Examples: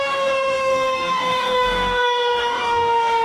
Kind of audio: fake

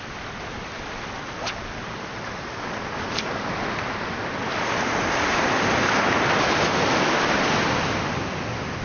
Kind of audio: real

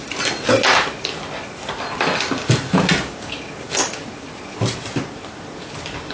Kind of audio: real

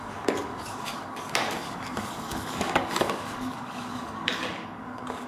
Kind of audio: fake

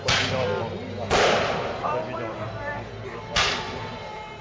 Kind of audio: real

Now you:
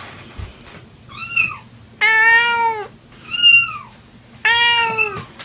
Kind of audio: real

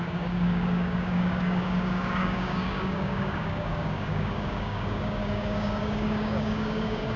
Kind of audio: fake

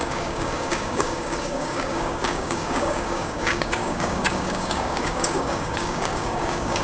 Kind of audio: fake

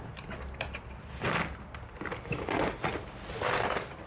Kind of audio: real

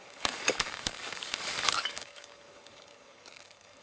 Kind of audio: fake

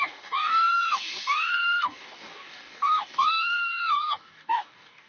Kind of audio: fake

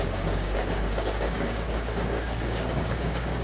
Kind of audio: fake